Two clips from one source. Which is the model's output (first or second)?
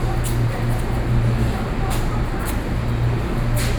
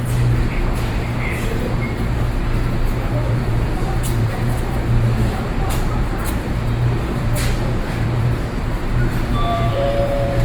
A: second